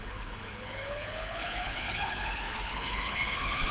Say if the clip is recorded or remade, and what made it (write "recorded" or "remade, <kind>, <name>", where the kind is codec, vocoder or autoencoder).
remade, codec, HILCodec